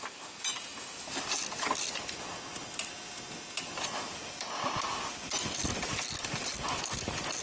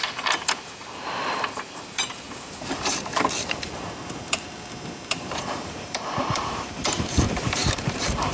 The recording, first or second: first